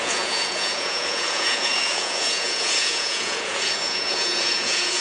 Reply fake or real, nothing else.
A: fake